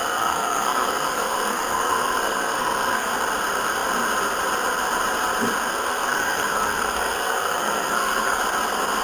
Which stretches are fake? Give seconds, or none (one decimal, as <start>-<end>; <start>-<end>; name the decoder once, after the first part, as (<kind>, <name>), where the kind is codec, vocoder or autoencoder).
0.0-3.1 (codec, SNAC); 5.7-8.4